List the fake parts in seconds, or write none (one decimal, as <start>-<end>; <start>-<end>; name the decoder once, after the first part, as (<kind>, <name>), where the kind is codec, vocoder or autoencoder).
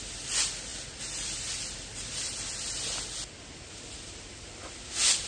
none